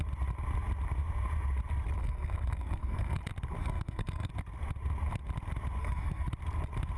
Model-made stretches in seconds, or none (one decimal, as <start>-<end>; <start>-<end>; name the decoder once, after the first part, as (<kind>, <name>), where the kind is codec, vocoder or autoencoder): 2.0-3.2 (codec, SNAC); 3.6-4.3; 5.8-6.3